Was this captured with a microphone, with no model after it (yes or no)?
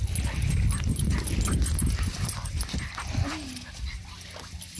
yes